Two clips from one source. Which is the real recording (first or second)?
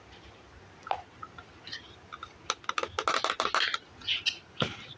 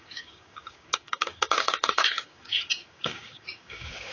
first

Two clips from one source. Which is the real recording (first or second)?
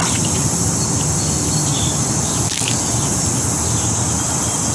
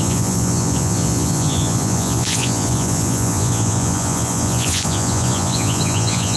first